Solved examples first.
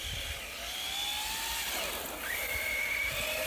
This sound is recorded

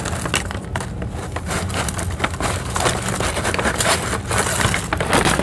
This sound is recorded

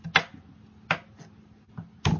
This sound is recorded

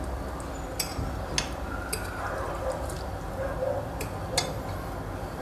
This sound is recorded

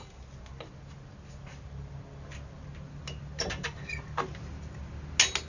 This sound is recorded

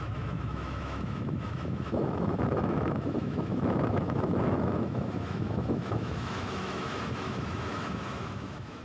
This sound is remade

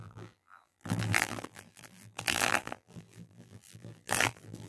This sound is remade